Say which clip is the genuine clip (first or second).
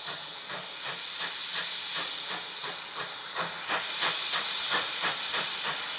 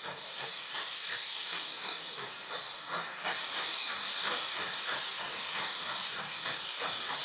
first